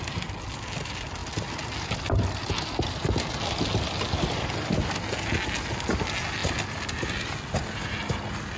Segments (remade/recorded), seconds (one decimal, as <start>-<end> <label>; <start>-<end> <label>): 0.0-8.6 recorded

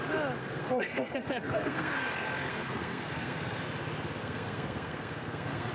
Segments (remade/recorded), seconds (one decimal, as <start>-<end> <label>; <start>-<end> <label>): 0.0-0.4 recorded; 0.4-1.9 remade; 1.9-2.5 recorded; 2.5-3.6 remade; 3.6-4.2 recorded; 4.2-5.7 remade

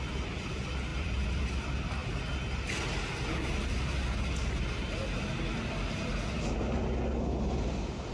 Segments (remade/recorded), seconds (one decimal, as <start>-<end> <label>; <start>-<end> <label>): 0.0-0.9 recorded; 0.9-1.5 remade; 1.5-8.1 recorded

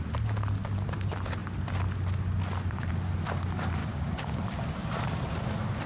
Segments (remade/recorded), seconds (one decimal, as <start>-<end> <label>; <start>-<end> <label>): 0.0-3.8 recorded; 3.8-4.4 remade; 4.4-5.9 recorded

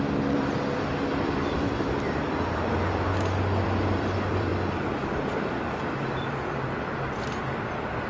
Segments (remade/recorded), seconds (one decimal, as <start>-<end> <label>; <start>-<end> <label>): 0.0-4.5 remade; 4.5-5.2 recorded; 5.2-8.1 remade

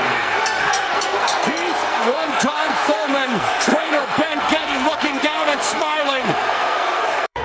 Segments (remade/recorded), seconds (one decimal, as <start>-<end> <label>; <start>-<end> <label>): 0.0-7.4 remade